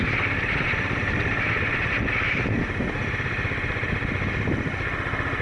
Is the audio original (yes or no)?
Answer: yes